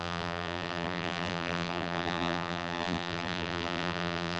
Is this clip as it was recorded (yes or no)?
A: no